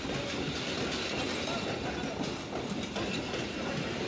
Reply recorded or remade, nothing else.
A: recorded